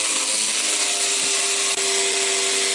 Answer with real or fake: real